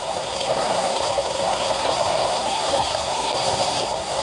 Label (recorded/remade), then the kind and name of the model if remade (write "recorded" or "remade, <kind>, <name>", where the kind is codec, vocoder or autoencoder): remade, codec, SNAC